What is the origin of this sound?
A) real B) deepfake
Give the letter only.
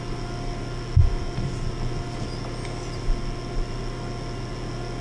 A